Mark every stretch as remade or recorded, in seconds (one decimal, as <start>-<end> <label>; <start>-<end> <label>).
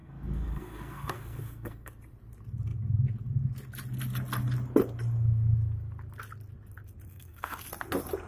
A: 0.0-1.9 remade; 1.9-7.1 recorded; 7.1-7.7 remade; 7.7-8.3 recorded